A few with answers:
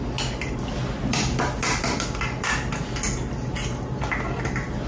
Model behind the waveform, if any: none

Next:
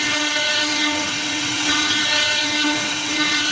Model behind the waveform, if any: vocoder, WaveNeXt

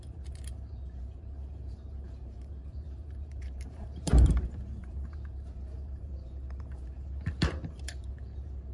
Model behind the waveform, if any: vocoder, BigVGAN v2